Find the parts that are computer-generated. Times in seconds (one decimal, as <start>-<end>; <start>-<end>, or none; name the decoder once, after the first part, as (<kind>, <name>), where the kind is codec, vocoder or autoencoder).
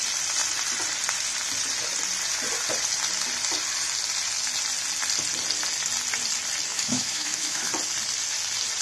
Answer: 6.7-7.7 (autoencoder, DAC-VAE)